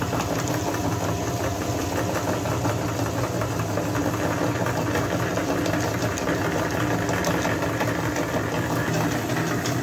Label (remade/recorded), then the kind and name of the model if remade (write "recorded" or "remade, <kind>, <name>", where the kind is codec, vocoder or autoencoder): recorded